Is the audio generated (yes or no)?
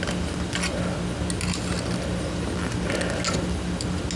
no